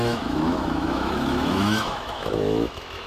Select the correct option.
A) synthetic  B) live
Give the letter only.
A